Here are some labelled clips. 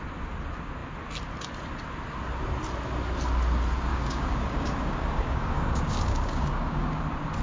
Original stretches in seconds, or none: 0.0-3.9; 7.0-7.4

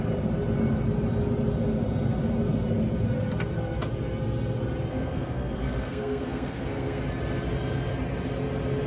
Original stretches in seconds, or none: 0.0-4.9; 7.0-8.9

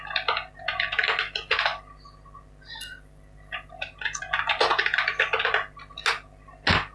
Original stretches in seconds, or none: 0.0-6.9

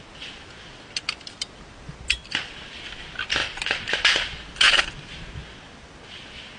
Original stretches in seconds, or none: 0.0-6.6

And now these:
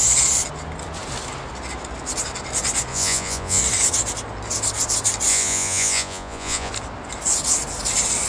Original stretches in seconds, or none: 0.0-2.9; 3.6-5.3; 6.7-8.3

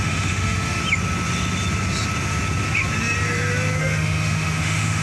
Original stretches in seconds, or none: 0.8-3.8

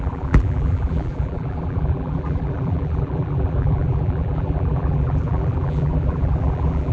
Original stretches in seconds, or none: none